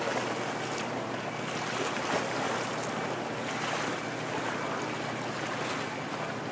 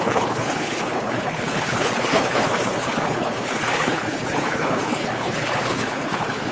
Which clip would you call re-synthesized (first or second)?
second